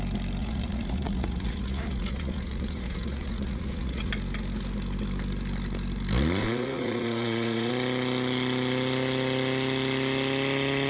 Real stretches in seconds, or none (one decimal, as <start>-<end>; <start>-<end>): 0.0-0.4; 4.1-6.4; 7.7-10.9